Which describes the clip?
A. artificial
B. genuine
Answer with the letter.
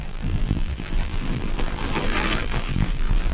A